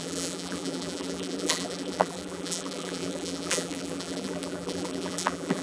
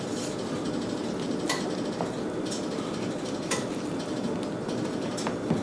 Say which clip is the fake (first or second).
first